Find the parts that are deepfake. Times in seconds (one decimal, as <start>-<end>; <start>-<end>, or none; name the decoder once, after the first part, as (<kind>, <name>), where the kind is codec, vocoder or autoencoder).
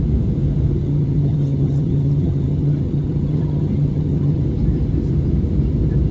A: 0.8-4.4 (vocoder, HiFi-GAN)